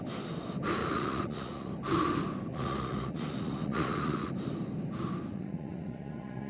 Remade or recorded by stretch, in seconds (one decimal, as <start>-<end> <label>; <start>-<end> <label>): 0.0-0.8 recorded; 0.8-1.7 remade; 1.7-2.5 recorded; 2.5-4.3 remade; 4.3-5.3 recorded; 5.3-6.5 remade